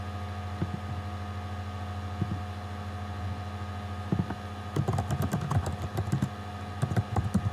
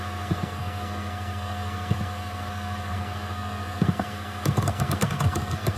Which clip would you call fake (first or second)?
second